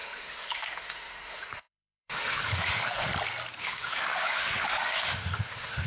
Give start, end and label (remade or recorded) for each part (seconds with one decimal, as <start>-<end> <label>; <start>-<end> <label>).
0.0-3.1 remade; 3.1-3.6 recorded; 3.6-5.9 remade